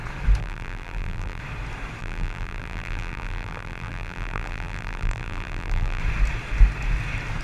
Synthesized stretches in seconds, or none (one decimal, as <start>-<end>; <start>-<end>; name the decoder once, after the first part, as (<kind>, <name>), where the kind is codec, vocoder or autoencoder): 0.4-1.4 (vocoder, BigVGAN v2); 2.0-6.0